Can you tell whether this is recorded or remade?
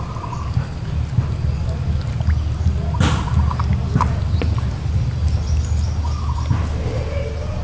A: recorded